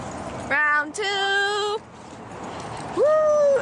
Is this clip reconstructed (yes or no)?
no